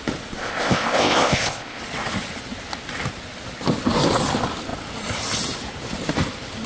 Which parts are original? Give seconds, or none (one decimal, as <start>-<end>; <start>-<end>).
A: 0.0-0.4; 1.8-6.7